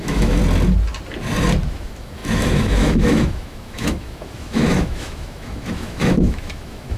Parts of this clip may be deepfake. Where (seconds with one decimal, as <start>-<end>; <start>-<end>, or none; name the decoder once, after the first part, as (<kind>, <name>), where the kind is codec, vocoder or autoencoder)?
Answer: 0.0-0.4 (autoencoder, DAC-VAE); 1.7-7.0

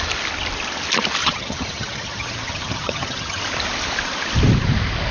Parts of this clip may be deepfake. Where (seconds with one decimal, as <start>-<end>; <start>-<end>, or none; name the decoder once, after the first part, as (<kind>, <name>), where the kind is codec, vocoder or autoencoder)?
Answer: 1.2-3.4 (vocoder, HiFi-GAN)

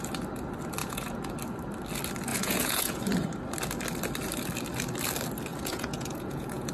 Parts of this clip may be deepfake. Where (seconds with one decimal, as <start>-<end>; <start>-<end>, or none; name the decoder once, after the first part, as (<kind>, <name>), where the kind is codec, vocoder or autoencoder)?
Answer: 0.8-1.3 (vocoder, Vocos); 2.3-3.0; 5.5-6.7

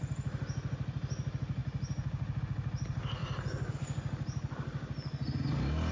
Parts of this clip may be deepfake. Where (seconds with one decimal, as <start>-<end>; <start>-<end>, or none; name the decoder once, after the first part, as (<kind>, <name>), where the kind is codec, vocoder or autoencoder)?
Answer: none

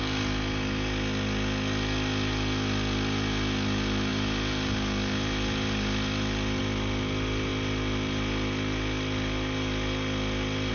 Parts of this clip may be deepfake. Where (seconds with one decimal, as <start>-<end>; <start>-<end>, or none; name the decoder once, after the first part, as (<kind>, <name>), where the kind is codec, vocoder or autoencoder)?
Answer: none